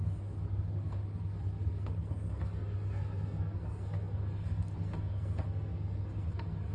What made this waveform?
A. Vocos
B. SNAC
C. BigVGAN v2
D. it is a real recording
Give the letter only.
B